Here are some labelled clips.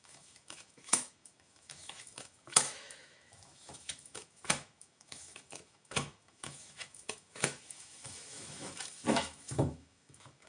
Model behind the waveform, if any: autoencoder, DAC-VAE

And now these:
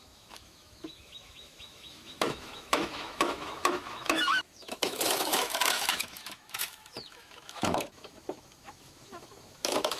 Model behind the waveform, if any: autoencoder, DAC-VAE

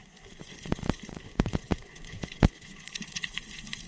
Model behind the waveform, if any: vocoder, Vocos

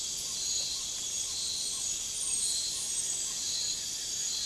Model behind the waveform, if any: none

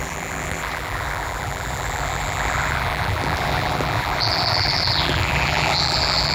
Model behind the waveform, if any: vocoder, BigVGAN v2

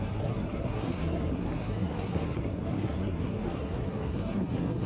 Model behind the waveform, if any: codec, SNAC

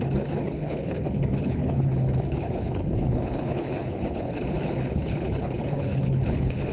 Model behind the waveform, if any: codec, HILCodec